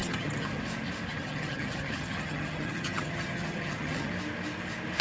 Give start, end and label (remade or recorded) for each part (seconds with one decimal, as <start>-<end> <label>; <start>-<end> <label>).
0.0-0.6 remade; 0.6-1.1 recorded; 1.1-4.1 remade; 4.1-5.0 recorded